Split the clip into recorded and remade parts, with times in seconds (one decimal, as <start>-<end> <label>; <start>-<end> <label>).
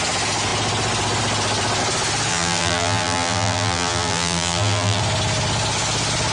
0.0-2.3 recorded; 2.3-5.0 remade; 5.0-6.3 recorded